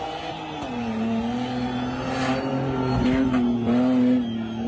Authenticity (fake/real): real